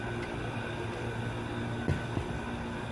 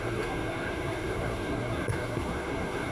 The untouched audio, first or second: first